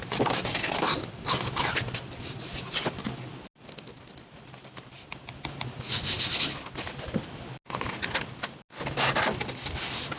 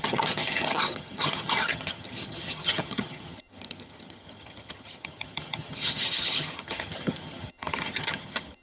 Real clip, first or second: first